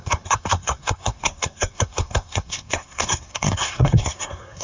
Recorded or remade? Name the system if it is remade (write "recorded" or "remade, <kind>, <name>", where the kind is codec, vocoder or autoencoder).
remade, codec, SNAC